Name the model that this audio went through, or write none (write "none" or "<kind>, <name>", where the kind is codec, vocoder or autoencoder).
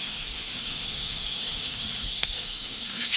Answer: codec, SNAC